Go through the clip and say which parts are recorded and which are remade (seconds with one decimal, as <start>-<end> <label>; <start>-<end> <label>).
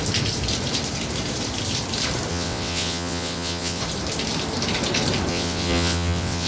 0.0-2.3 recorded; 2.3-3.8 remade; 3.8-5.3 recorded; 5.3-6.5 remade